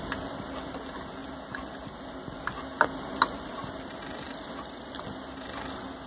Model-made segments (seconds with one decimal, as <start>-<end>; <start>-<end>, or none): none